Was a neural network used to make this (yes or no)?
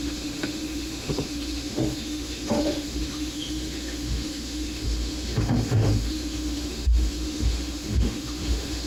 yes